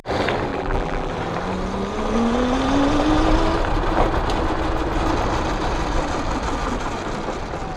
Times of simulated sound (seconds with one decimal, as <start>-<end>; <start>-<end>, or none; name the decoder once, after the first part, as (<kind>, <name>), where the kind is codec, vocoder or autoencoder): 0.5-1.1 (vocoder, BigVGAN v2)